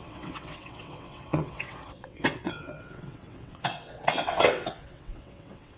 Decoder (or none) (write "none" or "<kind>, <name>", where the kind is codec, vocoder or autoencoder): vocoder, WaveNeXt